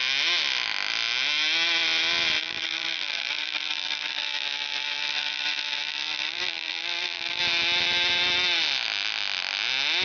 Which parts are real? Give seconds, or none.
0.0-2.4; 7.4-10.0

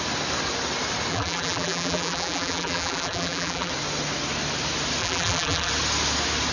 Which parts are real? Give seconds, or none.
0.0-1.1; 3.7-5.0; 5.7-6.5

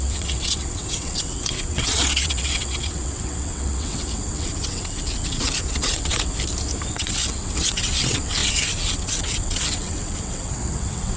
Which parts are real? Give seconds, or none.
6.3-6.9